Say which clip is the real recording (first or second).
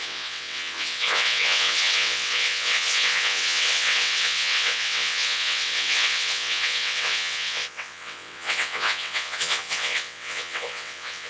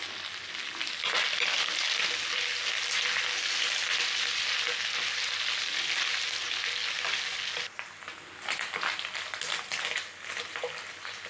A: second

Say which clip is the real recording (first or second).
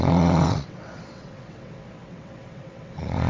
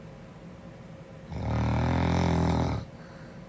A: second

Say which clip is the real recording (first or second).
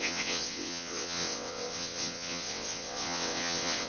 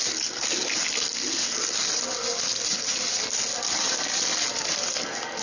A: second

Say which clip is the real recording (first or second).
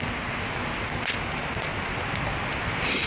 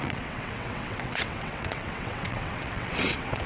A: first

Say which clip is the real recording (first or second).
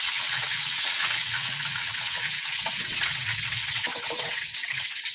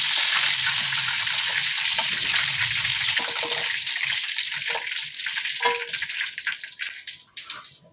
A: second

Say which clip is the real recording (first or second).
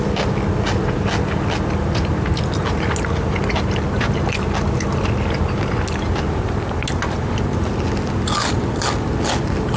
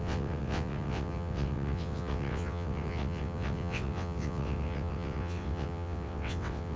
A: first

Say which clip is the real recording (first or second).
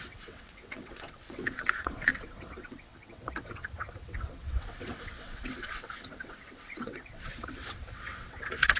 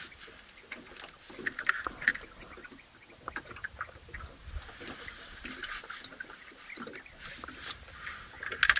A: second